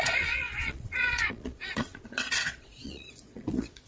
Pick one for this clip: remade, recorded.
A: remade